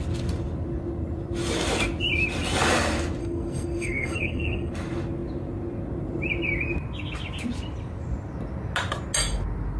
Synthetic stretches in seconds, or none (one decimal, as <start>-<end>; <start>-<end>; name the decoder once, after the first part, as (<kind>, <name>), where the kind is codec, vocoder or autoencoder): 3.2-4.7 (codec, SNAC)